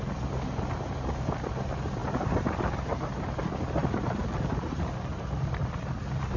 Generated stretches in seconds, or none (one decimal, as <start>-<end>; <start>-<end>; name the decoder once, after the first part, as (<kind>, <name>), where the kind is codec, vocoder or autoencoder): 2.0-3.2 (vocoder, BigVGAN v2); 3.8-6.4